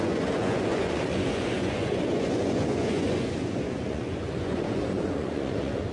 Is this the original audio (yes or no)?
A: no